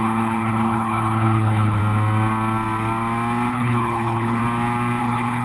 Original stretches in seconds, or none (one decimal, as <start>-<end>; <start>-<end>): 1.8-3.5; 4.4-5.0